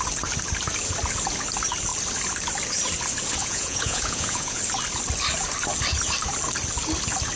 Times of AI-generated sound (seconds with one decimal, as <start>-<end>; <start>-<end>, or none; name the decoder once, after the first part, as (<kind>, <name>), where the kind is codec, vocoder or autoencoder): 3.4-4.6 (vocoder, Vocos)